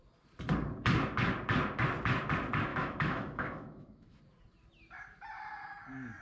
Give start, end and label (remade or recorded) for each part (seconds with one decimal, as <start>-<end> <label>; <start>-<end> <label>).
0.0-2.7 recorded; 2.7-4.2 remade; 4.2-6.2 recorded